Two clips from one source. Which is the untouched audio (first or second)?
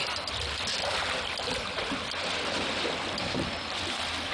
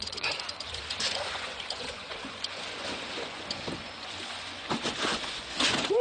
first